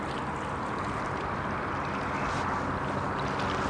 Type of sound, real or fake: real